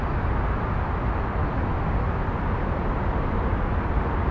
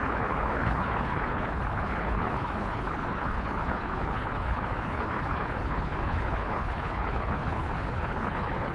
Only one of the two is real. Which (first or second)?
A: first